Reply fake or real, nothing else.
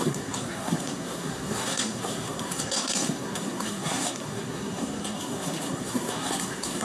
fake